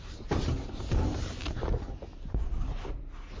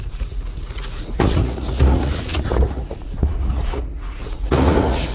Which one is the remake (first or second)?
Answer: second